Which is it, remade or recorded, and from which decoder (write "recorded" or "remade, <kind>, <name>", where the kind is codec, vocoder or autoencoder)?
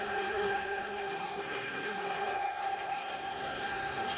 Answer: remade, codec, SNAC